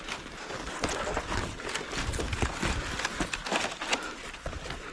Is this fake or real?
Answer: real